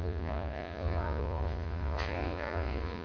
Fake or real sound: fake